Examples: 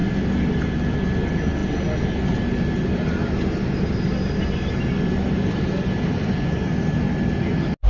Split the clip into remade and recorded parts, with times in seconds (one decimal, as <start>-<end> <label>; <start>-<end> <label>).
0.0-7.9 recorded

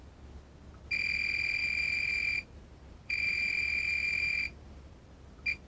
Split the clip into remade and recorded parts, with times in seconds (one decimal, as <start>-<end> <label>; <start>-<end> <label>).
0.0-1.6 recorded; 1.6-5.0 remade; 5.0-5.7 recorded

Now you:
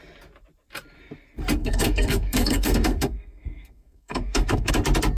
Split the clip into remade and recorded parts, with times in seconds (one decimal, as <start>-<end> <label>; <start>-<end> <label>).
0.0-1.6 recorded; 1.6-4.7 remade; 4.7-5.2 recorded

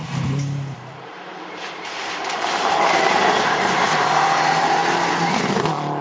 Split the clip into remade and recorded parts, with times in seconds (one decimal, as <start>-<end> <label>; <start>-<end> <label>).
0.0-4.8 remade; 4.8-6.0 recorded